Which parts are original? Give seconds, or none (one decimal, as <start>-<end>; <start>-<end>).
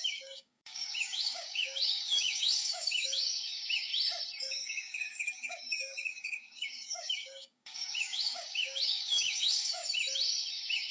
3.9-4.5; 9.8-10.5